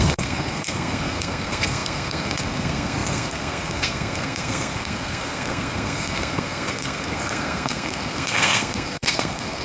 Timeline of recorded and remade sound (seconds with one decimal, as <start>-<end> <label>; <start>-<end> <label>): 0.0-9.6 remade